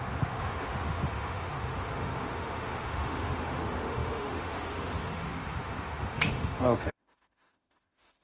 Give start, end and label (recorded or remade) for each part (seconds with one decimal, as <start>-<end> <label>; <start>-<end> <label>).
0.0-8.2 remade